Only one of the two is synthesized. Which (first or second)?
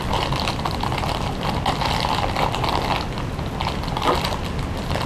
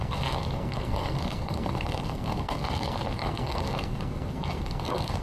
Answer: second